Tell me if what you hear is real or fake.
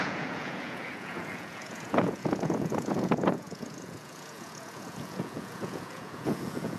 fake